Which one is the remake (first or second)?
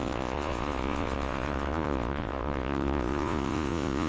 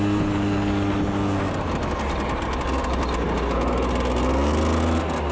first